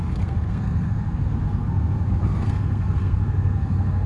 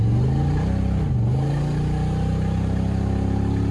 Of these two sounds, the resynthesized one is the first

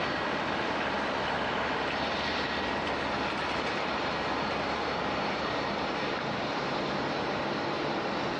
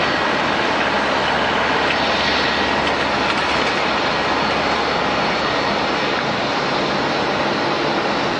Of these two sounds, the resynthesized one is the first